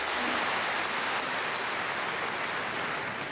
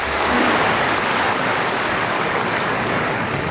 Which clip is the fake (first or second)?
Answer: second